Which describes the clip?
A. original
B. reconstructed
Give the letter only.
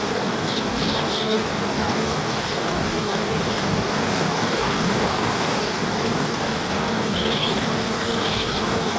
B